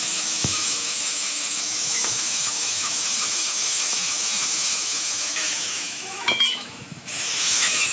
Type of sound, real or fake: fake